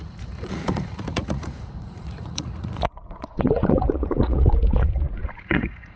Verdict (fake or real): fake